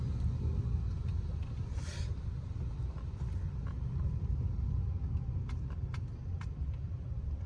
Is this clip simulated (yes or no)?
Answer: no